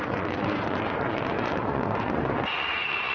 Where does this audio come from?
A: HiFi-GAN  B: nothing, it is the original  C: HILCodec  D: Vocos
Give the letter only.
D